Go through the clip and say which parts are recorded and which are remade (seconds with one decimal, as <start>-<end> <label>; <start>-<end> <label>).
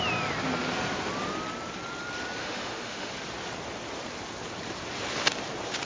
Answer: 0.0-2.4 recorded; 2.4-3.1 remade; 3.1-5.9 recorded